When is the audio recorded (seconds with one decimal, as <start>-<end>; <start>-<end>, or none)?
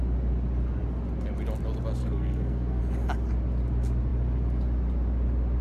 0.0-2.0; 2.8-5.6